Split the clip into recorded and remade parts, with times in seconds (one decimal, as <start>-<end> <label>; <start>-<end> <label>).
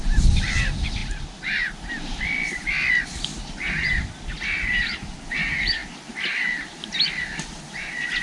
0.0-8.2 recorded